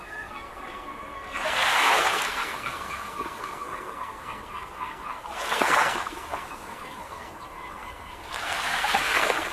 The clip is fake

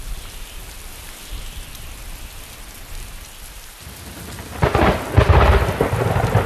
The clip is real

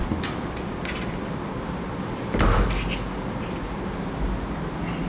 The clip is real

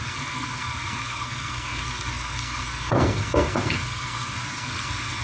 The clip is fake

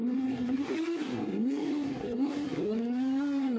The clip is fake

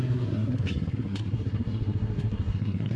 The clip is fake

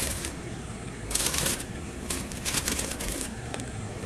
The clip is fake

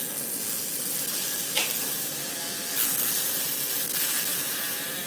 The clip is real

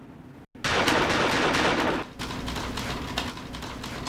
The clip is real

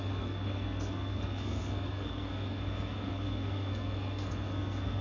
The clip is fake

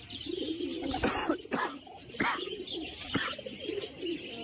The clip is real